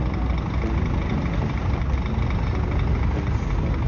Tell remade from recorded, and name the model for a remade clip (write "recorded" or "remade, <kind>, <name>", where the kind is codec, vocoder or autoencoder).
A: recorded